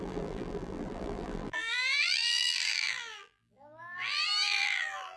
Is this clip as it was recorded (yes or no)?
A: no